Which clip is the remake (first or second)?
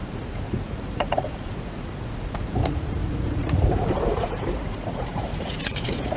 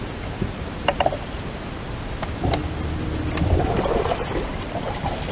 first